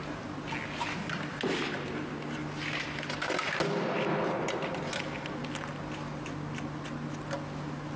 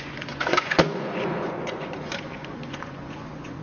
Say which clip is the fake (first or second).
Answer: second